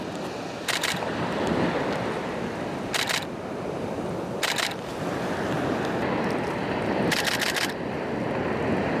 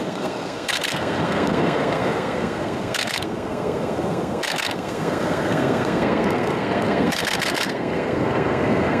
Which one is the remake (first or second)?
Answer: second